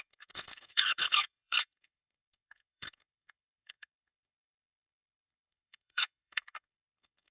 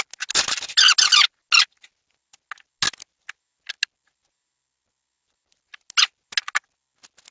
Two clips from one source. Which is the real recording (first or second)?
second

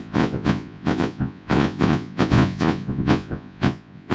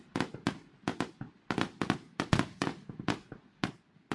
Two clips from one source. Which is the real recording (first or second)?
second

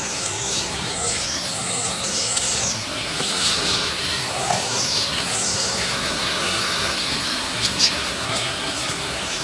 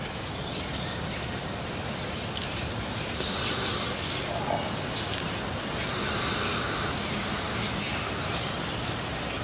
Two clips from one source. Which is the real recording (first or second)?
second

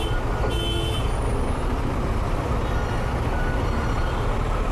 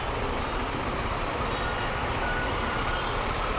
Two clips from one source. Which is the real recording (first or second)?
first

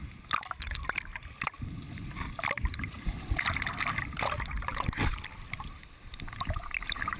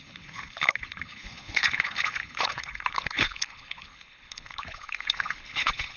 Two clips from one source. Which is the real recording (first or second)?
first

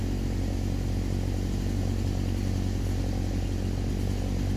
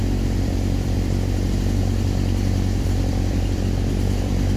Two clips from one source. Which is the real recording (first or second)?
first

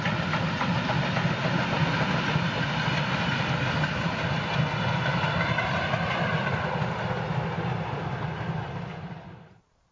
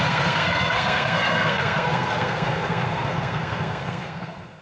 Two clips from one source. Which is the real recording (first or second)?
first